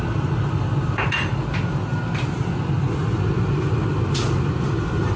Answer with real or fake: real